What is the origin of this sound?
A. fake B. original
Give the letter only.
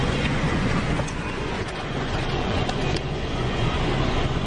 A